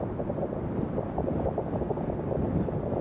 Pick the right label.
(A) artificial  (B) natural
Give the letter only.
B